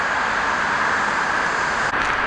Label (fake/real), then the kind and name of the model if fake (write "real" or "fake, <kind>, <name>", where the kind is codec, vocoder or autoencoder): real